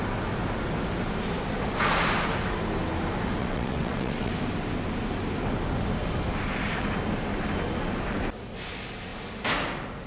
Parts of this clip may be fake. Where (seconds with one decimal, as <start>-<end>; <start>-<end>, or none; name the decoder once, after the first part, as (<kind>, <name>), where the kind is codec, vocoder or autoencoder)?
3.4-4.3 (vocoder, WaveNeXt)